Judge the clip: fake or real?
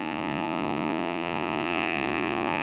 fake